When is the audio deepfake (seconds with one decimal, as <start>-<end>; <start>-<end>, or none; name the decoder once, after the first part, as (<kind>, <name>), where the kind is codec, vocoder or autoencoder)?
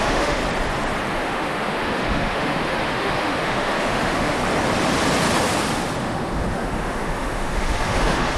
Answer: 0.0-0.4 (autoencoder, DAC-VAE); 1.1-4.4; 6.0-8.4